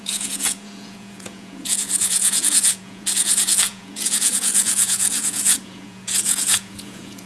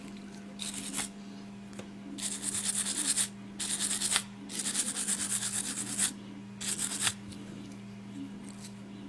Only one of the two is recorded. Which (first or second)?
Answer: second